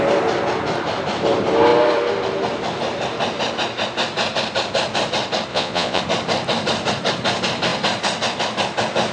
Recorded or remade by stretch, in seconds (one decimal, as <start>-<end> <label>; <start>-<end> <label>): 0.0-5.5 recorded; 5.5-6.0 remade; 6.0-9.1 recorded